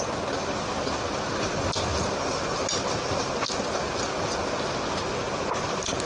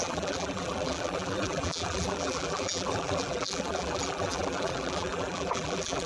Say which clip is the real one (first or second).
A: first